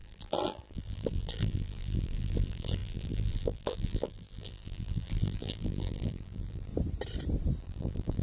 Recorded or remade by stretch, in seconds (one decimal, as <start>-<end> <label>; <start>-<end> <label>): 0.0-6.7 remade; 6.7-7.6 recorded; 7.6-8.2 remade